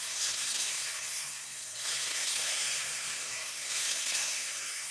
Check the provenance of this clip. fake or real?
fake